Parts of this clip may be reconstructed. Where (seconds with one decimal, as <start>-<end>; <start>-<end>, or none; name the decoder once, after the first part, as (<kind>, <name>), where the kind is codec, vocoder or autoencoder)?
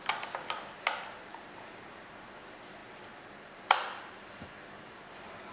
none